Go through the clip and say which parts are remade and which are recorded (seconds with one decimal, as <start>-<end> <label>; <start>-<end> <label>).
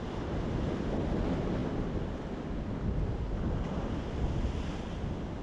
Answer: 0.0-5.4 recorded